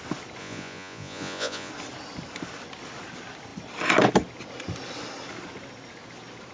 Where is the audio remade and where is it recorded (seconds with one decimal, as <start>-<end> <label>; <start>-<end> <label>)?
0.0-0.4 recorded; 0.4-1.7 remade; 1.7-6.5 recorded